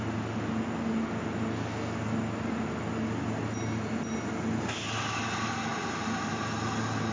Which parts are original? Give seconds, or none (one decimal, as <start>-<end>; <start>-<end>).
0.0-7.1